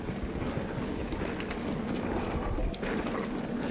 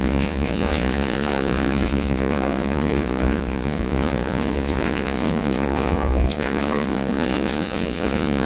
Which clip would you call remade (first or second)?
second